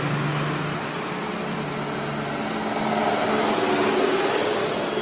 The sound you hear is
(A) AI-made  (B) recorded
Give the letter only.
B